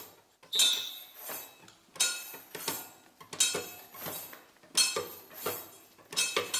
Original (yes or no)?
yes